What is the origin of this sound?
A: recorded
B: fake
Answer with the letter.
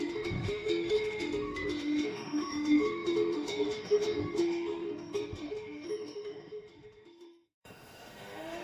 B